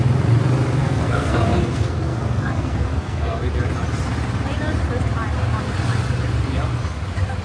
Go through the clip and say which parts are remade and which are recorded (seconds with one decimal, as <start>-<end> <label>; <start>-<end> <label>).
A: 0.0-0.8 recorded; 0.8-3.4 remade; 3.4-7.4 recorded